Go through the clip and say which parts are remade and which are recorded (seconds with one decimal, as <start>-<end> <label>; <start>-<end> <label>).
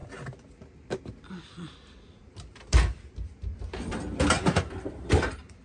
0.0-5.6 recorded